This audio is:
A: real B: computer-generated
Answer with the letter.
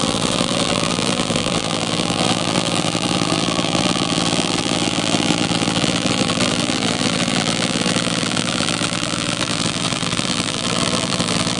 B